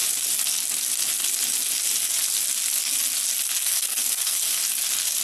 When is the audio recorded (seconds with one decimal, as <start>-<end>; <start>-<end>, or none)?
0.0-3.6; 4.6-5.2